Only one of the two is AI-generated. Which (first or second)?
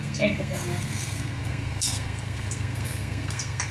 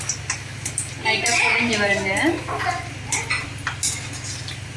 first